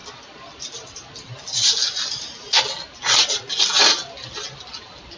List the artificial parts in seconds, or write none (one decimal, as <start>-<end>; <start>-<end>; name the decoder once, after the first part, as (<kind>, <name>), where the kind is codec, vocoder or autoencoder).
none